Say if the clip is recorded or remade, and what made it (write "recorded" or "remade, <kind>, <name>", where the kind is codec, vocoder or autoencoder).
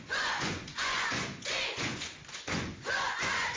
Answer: remade, vocoder, Vocos